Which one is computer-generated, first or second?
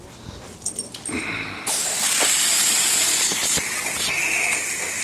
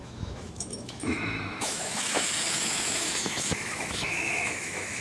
second